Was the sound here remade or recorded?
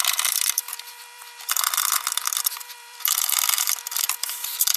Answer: remade